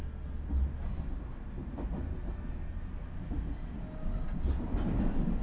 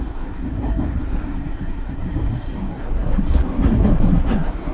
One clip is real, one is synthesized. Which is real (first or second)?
first